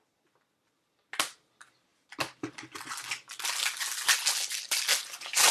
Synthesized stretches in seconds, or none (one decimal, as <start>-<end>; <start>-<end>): none